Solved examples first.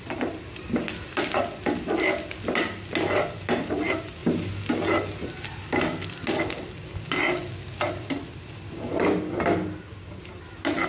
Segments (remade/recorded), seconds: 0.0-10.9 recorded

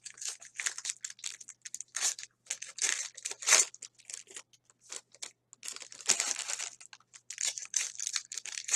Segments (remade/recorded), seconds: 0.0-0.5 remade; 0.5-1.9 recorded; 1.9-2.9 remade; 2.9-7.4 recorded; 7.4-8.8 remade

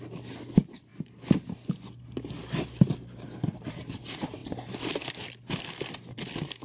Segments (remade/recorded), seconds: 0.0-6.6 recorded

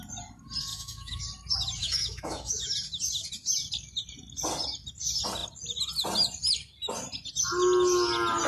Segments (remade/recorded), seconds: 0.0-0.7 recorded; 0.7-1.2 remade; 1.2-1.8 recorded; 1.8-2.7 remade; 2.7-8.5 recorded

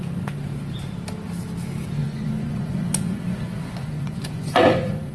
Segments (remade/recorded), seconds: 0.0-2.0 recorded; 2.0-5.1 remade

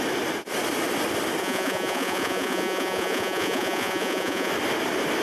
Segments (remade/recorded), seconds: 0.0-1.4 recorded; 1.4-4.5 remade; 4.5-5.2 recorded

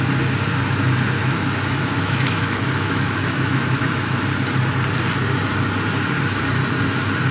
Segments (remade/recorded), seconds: 0.0-1.2 recorded; 1.2-4.2 remade; 4.2-7.3 recorded

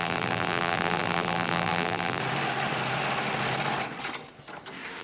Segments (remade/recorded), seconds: 0.0-2.2 remade; 2.2-5.0 recorded